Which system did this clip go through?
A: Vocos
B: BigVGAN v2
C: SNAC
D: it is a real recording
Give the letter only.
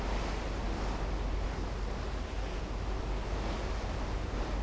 D